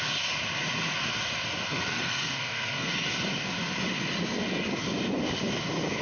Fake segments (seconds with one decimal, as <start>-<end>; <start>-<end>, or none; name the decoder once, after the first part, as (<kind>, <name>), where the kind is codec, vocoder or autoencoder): 1.8-2.9 (codec, SNAC)